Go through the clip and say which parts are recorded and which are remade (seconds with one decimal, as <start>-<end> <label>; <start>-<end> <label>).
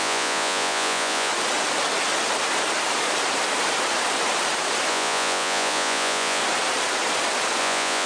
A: 0.0-1.3 remade; 1.3-4.9 recorded; 4.9-6.4 remade; 6.4-7.6 recorded; 7.6-8.1 remade